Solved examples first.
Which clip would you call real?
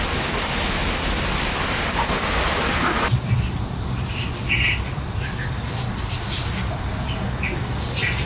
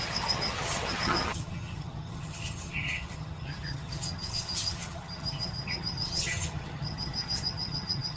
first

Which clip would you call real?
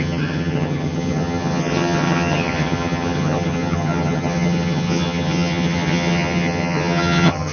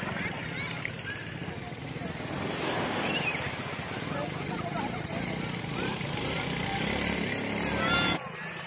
second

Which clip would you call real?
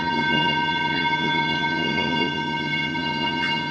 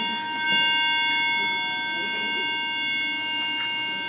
second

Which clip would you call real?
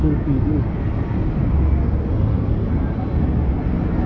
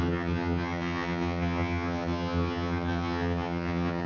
first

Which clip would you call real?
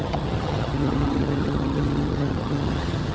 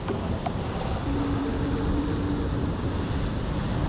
second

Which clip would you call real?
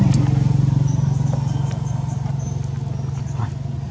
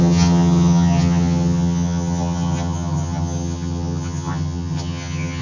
first